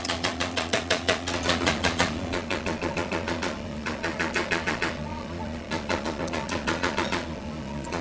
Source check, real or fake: fake